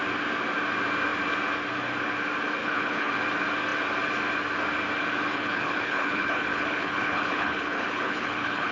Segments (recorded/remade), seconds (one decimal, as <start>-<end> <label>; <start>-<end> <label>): 0.0-2.6 recorded; 2.6-3.1 remade; 3.1-5.3 recorded; 5.3-8.7 remade